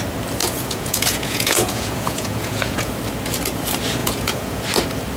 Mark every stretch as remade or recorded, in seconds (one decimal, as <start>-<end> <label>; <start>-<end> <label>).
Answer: 0.0-0.4 recorded; 0.4-2.9 remade; 2.9-4.0 recorded; 4.0-4.6 remade; 4.6-5.2 recorded